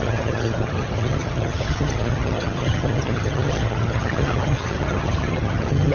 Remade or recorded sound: remade